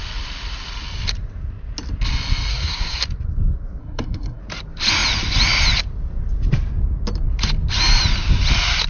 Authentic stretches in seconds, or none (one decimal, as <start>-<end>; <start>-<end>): 0.0-2.5; 3.0-3.8; 4.4-8.9